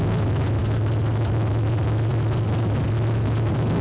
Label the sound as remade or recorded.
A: recorded